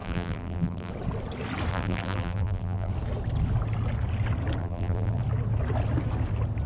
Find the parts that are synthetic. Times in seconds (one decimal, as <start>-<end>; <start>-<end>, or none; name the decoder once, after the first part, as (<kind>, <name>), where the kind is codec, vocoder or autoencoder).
0.0-0.9 (vocoder, BigVGAN v2); 1.7-2.9; 4.6-5.2